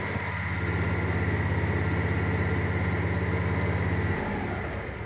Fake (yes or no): no